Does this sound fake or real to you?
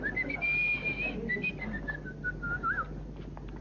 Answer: real